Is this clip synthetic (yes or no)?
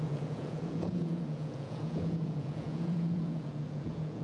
yes